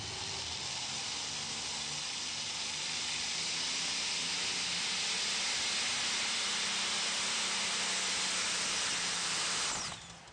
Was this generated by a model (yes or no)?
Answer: no